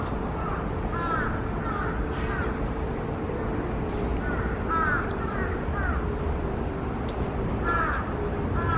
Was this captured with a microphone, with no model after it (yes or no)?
yes